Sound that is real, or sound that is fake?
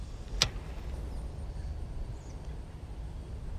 real